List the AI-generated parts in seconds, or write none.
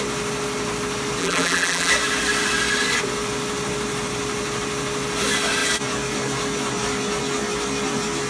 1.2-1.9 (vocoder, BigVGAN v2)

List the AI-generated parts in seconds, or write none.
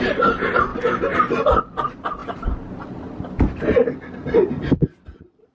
0.0-0.7 (vocoder, BigVGAN v2); 1.6-5.5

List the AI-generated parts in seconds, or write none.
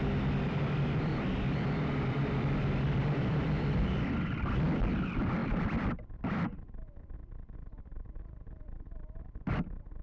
0.0-1.1 (vocoder, BigVGAN v2); 1.7-10.0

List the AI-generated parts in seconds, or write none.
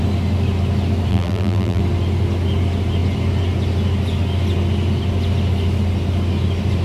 1.1-1.8 (vocoder, BigVGAN v2)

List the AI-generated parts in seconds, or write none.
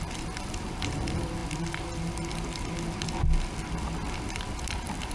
0.0-1.4 (vocoder, BigVGAN v2); 4.1-5.1